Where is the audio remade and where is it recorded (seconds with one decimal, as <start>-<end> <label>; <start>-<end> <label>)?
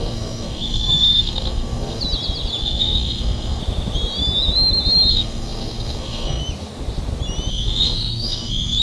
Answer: 0.0-2.0 remade; 2.0-2.6 recorded; 2.6-3.6 remade; 3.6-5.1 recorded; 5.1-6.4 remade; 6.4-7.5 recorded; 7.5-8.8 remade